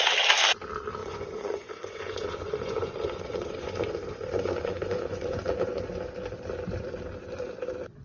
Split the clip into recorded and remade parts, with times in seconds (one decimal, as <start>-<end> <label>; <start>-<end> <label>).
0.0-1.0 recorded; 1.0-5.8 remade; 5.8-8.0 recorded